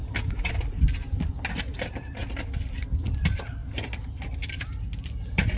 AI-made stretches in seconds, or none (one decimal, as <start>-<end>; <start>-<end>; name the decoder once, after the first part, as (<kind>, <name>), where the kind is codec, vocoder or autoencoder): none